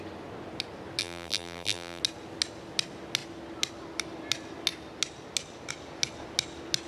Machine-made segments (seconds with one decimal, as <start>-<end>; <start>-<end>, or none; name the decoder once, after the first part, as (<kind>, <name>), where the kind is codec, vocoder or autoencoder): 1.0-2.0 (vocoder, BigVGAN v2)